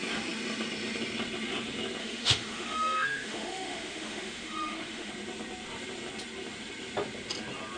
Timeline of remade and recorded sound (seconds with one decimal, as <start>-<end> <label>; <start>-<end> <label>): 0.0-2.0 recorded; 2.0-5.1 remade; 5.1-7.8 recorded